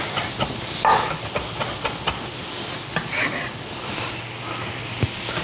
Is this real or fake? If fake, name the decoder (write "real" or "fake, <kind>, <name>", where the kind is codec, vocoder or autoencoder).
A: real